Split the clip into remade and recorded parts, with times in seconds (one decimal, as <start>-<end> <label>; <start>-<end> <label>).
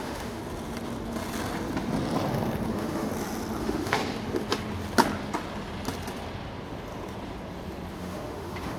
0.0-0.4 remade; 0.4-2.7 recorded; 2.7-3.1 remade; 3.1-3.6 recorded; 3.6-4.0 remade; 4.0-7.9 recorded; 7.9-8.8 remade